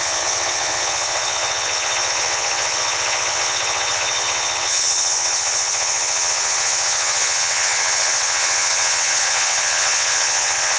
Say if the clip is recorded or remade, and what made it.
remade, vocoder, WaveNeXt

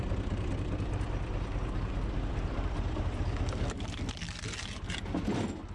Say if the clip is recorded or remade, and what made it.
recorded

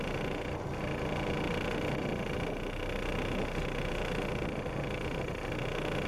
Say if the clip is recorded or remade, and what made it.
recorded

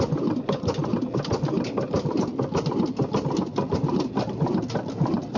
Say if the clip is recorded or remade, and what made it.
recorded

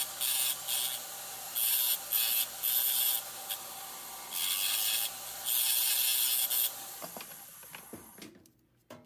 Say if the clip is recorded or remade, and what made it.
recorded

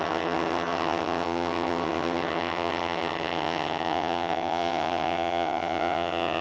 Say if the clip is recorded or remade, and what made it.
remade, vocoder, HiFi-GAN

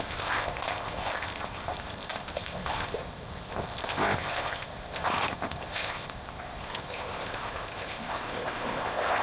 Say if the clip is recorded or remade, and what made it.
remade, codec, ZipCodec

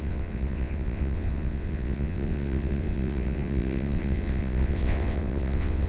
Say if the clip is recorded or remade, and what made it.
remade, vocoder, WaveNeXt